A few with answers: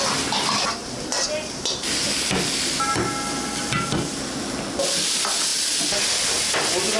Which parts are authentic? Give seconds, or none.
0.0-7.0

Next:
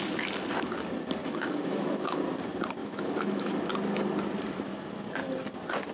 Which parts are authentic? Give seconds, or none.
0.0-1.2; 2.2-2.8; 3.6-5.9